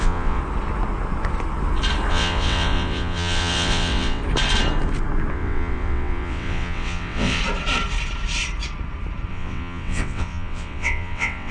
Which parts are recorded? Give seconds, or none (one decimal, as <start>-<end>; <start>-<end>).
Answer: 0.4-2.1; 4.2-5.3; 7.4-9.3